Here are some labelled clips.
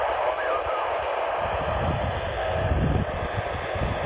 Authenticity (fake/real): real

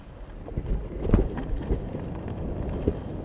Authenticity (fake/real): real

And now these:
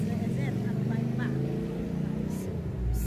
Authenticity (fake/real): real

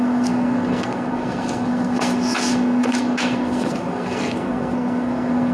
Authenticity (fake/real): fake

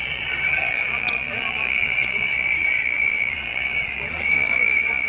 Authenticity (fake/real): fake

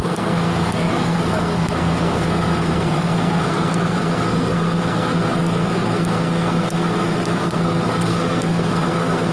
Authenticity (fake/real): fake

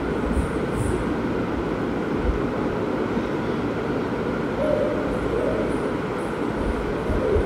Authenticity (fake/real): real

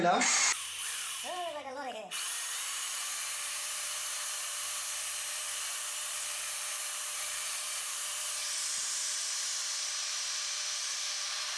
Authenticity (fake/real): fake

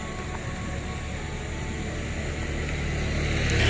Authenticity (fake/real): real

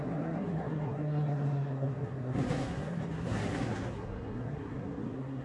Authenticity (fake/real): fake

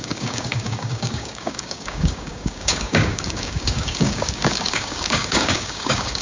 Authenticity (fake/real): fake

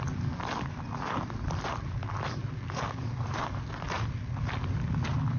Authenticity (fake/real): real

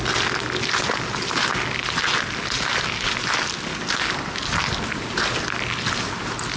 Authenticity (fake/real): real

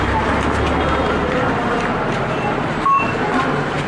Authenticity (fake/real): real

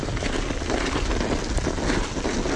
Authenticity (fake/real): real